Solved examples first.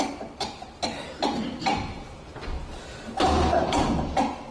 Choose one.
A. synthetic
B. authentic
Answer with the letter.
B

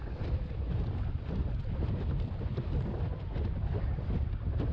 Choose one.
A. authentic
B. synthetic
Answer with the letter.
A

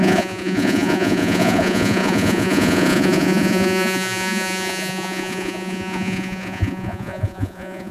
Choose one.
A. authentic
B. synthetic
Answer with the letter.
B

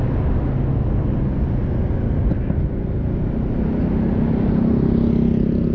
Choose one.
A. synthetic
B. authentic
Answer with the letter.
B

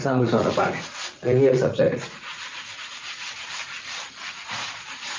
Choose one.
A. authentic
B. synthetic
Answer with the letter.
B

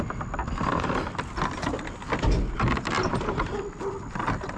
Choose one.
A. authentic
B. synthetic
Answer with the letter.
A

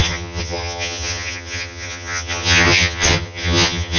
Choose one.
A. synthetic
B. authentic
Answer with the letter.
A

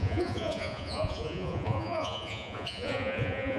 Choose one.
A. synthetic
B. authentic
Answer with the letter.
A